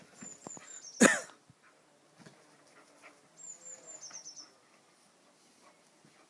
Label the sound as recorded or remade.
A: recorded